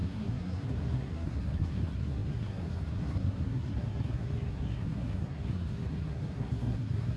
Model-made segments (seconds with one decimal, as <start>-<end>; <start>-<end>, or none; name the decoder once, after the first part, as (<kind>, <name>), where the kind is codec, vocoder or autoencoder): 0.0-7.2 (codec, SNAC)